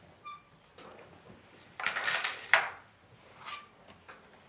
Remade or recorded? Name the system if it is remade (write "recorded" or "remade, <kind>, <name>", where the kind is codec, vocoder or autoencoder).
recorded